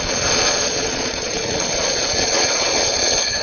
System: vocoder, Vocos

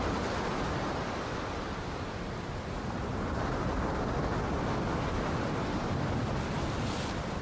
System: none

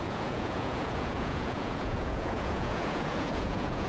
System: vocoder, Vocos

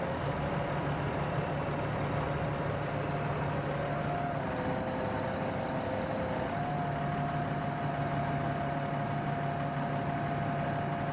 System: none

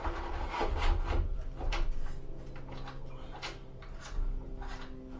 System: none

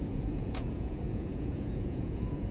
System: vocoder, Vocos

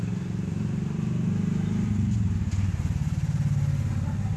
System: none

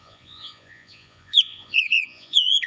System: vocoder, Vocos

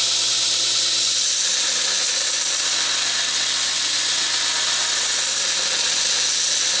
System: none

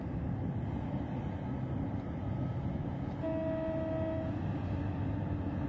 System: none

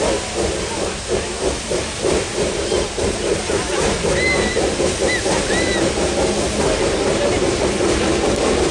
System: none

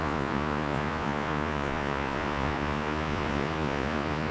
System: vocoder, Vocos